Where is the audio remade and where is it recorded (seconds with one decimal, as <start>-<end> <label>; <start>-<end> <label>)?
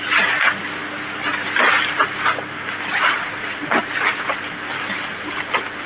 0.0-5.9 recorded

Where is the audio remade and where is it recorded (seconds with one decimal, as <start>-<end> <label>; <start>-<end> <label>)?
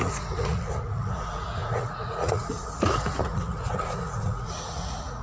0.0-5.2 remade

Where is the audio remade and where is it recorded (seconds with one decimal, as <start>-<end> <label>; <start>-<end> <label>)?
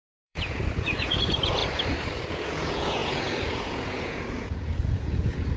0.0-1.6 remade; 1.6-2.3 recorded; 2.3-5.6 remade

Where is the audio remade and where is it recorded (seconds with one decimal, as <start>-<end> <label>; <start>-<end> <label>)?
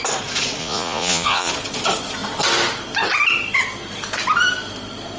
0.0-0.6 recorded; 0.6-1.5 remade; 1.5-5.2 recorded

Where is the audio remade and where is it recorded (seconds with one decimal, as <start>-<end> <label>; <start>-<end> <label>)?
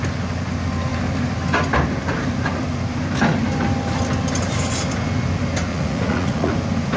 0.0-5.7 recorded; 5.7-6.5 remade; 6.5-7.0 recorded